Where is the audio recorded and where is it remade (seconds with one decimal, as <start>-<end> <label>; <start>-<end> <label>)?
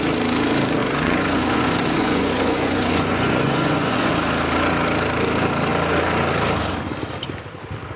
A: 0.0-0.8 recorded; 0.8-4.1 remade; 4.1-8.0 recorded